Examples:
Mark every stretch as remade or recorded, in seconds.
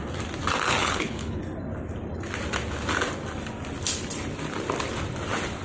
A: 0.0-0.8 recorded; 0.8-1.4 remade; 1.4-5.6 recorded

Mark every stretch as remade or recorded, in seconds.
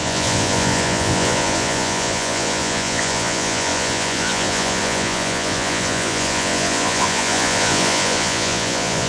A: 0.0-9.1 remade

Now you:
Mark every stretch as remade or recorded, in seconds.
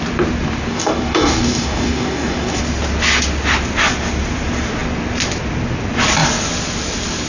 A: 0.0-0.7 recorded; 0.7-2.6 remade; 2.6-7.3 recorded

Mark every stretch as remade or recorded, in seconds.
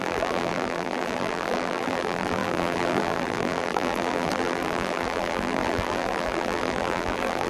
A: 0.0-7.5 remade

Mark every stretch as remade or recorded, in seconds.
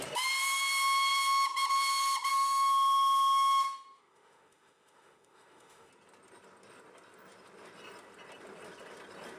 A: 0.0-2.3 recorded; 2.3-5.9 remade; 5.9-9.4 recorded